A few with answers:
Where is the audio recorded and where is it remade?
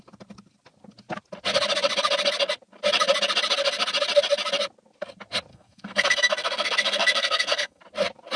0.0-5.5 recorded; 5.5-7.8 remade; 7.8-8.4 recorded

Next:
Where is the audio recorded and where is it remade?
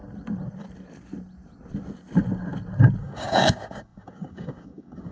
0.0-3.0 recorded; 3.0-5.1 remade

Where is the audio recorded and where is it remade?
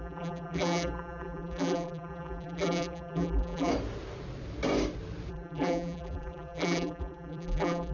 0.0-3.7 remade; 3.7-5.3 recorded; 5.3-7.9 remade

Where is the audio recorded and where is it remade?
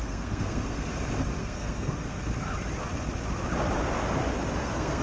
0.0-0.9 remade; 0.9-1.4 recorded; 1.4-2.2 remade; 2.2-4.6 recorded; 4.6-5.0 remade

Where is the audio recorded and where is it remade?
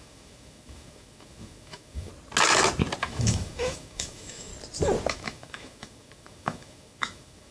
0.0-2.1 remade; 2.1-3.0 recorded; 3.0-4.5 remade; 4.5-5.1 recorded; 5.1-7.5 remade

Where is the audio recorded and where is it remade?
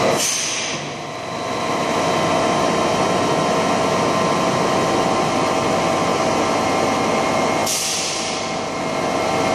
0.0-6.1 recorded; 6.1-6.7 remade; 6.7-7.6 recorded; 7.6-8.9 remade; 8.9-9.5 recorded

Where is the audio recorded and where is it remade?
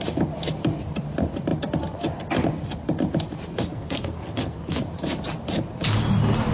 0.0-3.7 recorded; 3.7-4.8 remade; 4.8-6.5 recorded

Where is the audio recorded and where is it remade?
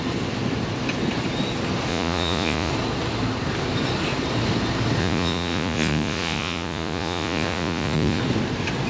0.0-1.9 recorded; 1.9-2.7 remade; 2.7-5.0 recorded; 5.0-8.2 remade; 8.2-8.9 recorded